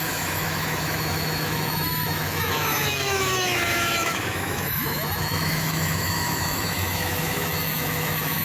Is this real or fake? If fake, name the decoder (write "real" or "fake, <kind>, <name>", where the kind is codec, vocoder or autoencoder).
fake, autoencoder, DAC-VAE